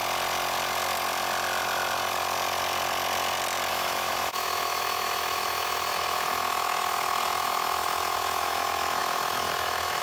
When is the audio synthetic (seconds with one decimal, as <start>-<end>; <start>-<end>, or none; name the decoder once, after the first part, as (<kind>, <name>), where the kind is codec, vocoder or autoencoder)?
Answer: 3.7-10.0 (autoencoder, DAC-VAE)